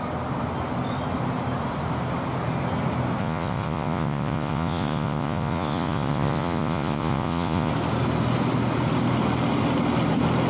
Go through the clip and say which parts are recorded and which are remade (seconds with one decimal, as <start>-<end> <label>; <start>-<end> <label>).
0.0-3.2 recorded; 3.2-7.7 remade; 7.7-10.5 recorded